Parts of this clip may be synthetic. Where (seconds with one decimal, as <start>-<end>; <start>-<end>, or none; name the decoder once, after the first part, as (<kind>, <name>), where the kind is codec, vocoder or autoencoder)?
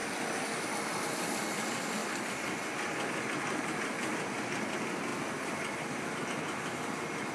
none